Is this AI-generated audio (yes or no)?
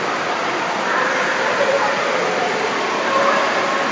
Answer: no